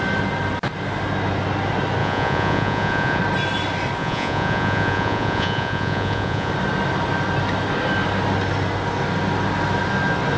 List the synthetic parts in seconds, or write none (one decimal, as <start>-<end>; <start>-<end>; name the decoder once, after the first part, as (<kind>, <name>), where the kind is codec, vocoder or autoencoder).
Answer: 2.0-3.2 (vocoder, Vocos); 4.0-6.5